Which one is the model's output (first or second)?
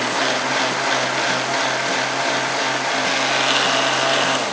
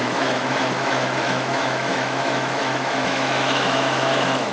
second